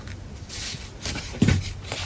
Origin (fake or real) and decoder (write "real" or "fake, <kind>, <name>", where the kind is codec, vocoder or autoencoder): real